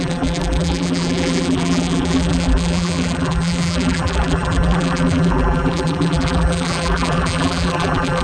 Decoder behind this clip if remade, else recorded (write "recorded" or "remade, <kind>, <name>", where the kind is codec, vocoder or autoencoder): remade, vocoder, BigVGAN v2